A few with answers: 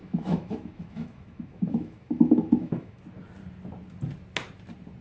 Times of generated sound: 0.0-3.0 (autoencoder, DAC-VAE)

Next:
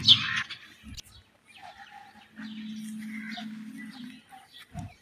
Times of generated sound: 1.6-2.2 (vocoder, BigVGAN v2); 4.2-5.0

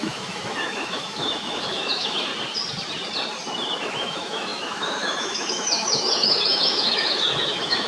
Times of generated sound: 0.0-2.3 (autoencoder, DAC-VAE); 3.8-7.9